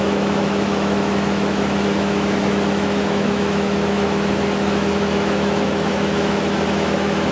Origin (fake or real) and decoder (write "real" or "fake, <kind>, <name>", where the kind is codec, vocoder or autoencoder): fake, autoencoder, DAC-VAE